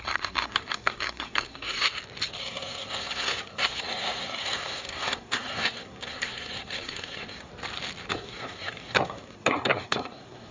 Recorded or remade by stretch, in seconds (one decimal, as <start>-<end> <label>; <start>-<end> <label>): 0.0-1.9 remade; 1.9-2.4 recorded; 2.4-7.5 remade; 7.5-8.1 recorded; 8.1-10.5 remade

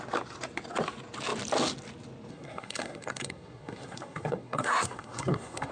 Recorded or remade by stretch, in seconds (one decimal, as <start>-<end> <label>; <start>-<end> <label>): 0.0-2.3 recorded; 2.3-5.7 remade

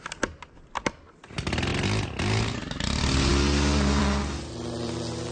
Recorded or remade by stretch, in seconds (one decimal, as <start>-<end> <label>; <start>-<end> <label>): 0.0-5.3 recorded

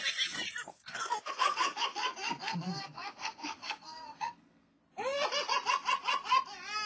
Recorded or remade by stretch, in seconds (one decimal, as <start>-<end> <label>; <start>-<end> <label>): 0.0-0.7 recorded; 0.7-4.8 remade; 4.8-6.9 recorded